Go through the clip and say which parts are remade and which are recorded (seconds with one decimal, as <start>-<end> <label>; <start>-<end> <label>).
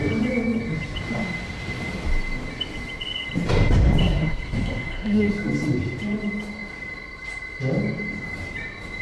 0.0-4.0 recorded; 4.0-5.3 remade; 5.3-9.0 recorded